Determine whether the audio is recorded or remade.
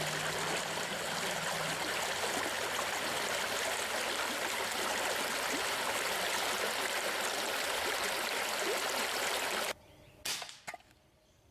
recorded